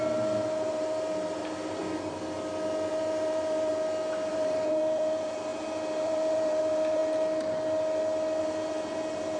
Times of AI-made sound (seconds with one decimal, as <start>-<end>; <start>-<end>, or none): 0.0-1.8; 2.9-3.7; 4.3-7.0; 8.4-9.4